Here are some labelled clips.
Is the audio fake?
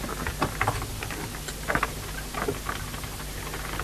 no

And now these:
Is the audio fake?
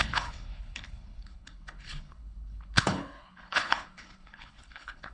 yes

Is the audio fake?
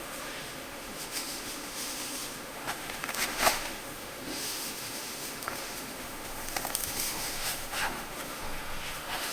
yes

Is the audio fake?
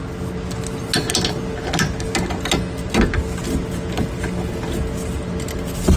no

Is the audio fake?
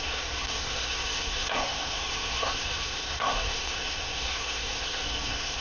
yes